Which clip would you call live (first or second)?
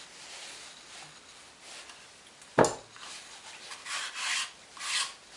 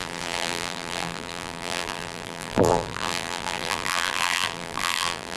first